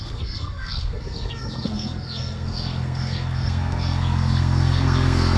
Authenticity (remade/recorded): remade